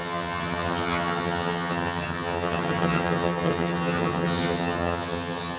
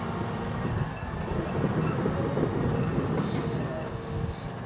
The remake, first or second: first